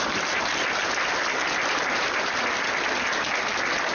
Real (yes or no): yes